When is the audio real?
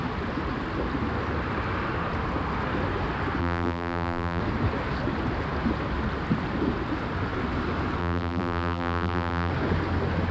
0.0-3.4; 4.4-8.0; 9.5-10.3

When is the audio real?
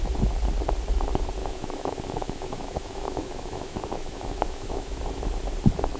0.0-1.4; 5.0-6.0